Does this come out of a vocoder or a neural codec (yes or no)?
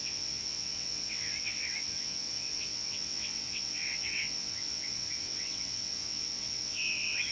yes